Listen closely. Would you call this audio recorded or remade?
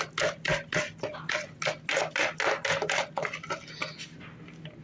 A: recorded